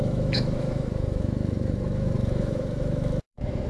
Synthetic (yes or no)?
yes